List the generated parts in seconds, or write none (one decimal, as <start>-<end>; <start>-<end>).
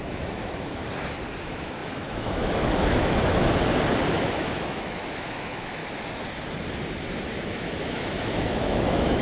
0.0-0.8; 1.4-3.4; 4.1-5.8; 7.5-9.2